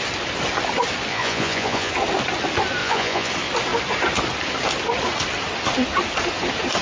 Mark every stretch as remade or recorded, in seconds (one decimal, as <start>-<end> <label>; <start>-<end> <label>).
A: 0.0-1.1 recorded; 1.1-1.9 remade; 1.9-2.8 recorded; 2.8-3.3 remade; 3.3-6.8 recorded